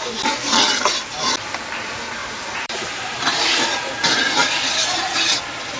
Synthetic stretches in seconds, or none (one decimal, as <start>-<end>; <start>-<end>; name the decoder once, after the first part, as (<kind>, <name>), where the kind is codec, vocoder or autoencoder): 2.2-3.2 (vocoder, BigVGAN v2)